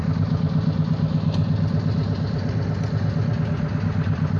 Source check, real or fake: real